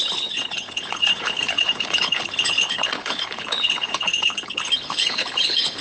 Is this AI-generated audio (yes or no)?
yes